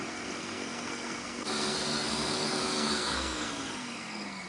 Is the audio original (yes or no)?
no